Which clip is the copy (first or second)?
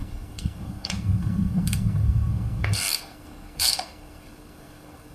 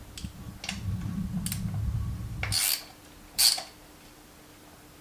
first